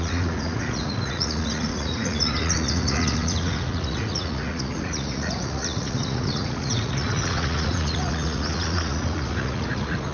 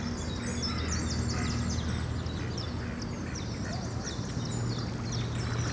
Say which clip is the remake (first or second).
first